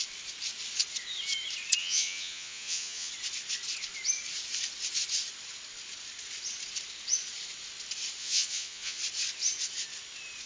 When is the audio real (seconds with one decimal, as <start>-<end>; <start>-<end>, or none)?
0.0-1.8; 3.1-8.2; 9.0-10.5